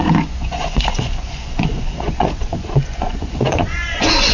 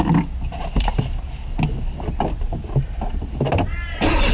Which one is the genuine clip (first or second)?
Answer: second